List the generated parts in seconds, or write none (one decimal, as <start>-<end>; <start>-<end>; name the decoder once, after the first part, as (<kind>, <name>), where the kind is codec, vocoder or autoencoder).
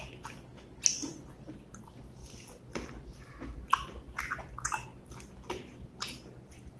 none